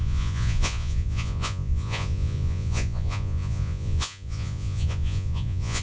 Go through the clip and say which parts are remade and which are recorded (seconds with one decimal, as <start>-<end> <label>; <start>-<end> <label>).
0.0-5.8 remade